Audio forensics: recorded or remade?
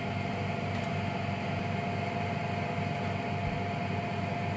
recorded